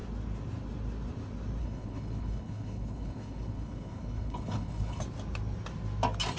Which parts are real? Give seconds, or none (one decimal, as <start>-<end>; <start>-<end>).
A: 0.0-1.6; 5.0-6.4